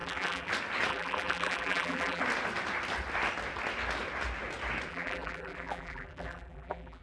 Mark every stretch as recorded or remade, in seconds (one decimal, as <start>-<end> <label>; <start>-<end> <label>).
0.0-0.5 remade; 0.5-0.9 recorded; 0.9-2.2 remade; 2.2-4.9 recorded; 4.9-7.0 remade

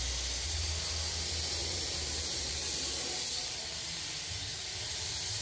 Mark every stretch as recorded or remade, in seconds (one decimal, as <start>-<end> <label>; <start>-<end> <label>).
0.0-1.6 recorded; 1.6-3.6 remade; 3.6-4.5 recorded; 4.5-5.4 remade

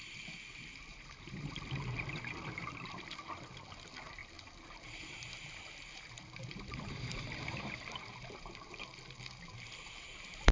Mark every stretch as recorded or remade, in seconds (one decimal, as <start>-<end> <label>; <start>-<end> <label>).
0.0-0.9 recorded; 0.9-1.5 remade; 1.5-4.2 recorded; 4.2-8.7 remade; 8.7-10.5 recorded

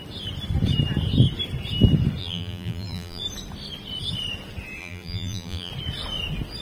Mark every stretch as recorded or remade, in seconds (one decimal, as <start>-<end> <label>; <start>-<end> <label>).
0.0-2.2 recorded; 2.2-3.2 remade; 3.2-4.8 recorded; 4.8-5.7 remade; 5.7-6.6 recorded